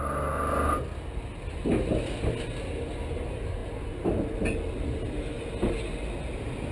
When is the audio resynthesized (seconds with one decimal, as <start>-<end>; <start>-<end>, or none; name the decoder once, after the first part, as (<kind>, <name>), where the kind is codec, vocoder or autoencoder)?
none